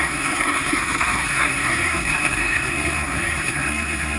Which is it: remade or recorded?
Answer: remade